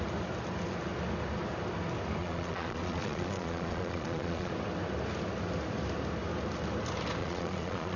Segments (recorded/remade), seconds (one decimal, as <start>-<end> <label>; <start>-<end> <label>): 0.0-2.2 recorded; 2.2-4.5 remade; 4.5-7.2 recorded; 7.2-8.0 remade